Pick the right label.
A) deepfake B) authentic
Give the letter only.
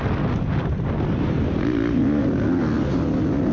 B